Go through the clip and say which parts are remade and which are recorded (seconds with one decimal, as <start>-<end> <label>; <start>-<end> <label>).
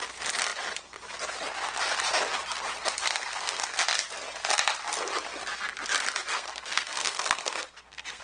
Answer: 0.0-3.2 recorded; 3.2-3.8 remade; 3.8-6.3 recorded; 6.3-8.2 remade